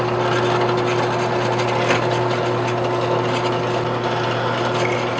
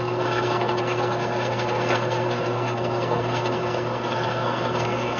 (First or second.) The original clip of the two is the first